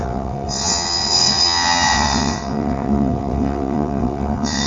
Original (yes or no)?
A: no